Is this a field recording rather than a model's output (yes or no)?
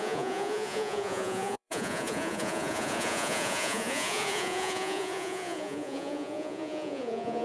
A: no